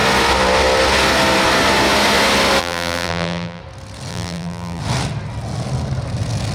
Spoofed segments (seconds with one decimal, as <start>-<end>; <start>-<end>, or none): 2.6-3.6; 4.1-4.8